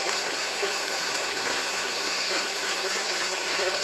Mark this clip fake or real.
fake